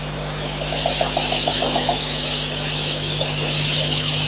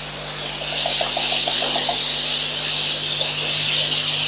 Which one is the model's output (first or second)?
first